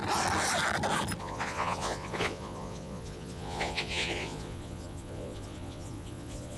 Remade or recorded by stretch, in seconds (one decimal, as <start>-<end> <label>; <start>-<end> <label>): 0.0-1.2 recorded; 1.2-6.6 remade